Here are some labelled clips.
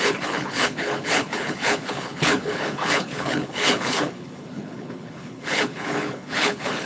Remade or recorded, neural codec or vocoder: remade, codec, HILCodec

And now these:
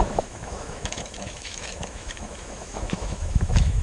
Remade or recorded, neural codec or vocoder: remade, autoencoder, DAC-VAE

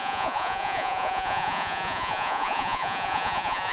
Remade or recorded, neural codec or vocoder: remade, vocoder, Vocos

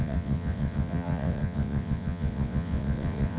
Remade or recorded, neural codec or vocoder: remade, vocoder, WaveNeXt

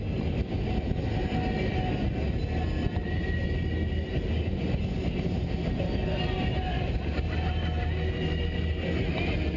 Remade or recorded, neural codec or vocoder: recorded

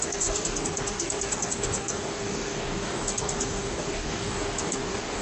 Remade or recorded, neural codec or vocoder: remade, codec, DAC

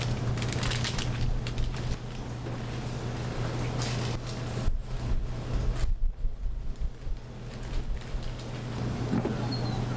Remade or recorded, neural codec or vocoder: recorded